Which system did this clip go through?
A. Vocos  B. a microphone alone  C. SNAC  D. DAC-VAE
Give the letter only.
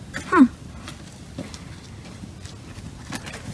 B